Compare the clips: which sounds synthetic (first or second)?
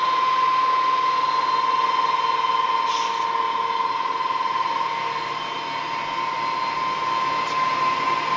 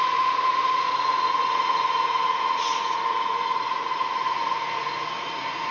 second